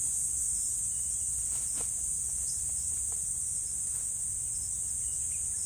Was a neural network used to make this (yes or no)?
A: no